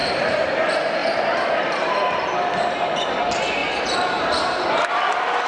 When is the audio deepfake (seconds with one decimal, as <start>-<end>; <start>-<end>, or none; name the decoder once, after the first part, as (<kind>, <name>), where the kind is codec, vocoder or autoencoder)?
0.0-0.5 (vocoder, BigVGAN v2); 1.0-1.5; 3.6-4.7